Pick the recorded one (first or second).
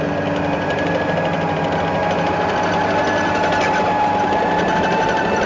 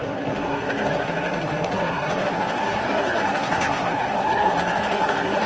first